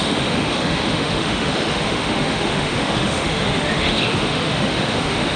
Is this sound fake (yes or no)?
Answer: yes